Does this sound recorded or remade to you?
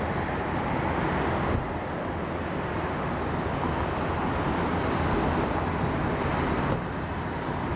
recorded